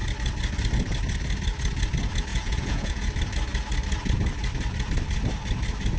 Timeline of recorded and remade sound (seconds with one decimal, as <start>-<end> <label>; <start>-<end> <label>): 0.0-2.3 recorded; 2.3-3.1 remade; 3.1-6.0 recorded